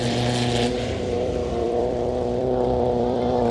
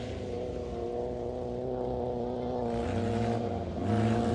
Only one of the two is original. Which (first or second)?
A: second